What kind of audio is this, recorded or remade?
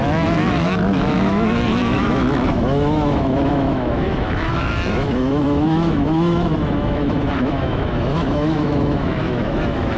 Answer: remade